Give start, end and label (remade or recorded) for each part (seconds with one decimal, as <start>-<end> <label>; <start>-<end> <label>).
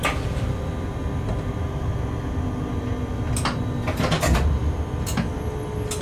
0.0-6.0 recorded